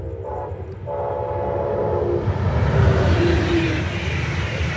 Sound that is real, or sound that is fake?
real